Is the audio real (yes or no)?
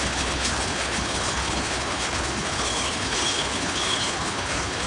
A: no